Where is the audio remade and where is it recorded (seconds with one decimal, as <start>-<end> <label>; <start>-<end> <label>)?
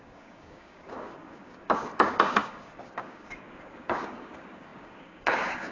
0.0-5.7 remade